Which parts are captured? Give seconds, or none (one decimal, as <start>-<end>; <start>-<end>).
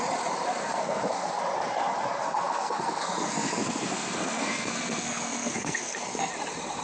0.0-0.6; 1.4-2.2; 6.3-6.8